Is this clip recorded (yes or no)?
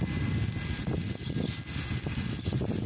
yes